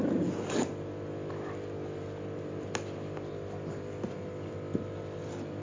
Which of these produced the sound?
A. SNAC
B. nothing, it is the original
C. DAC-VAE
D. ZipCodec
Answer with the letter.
B